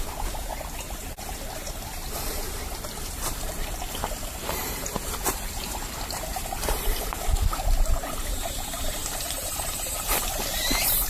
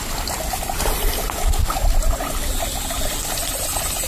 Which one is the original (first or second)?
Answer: second